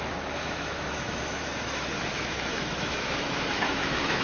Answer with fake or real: fake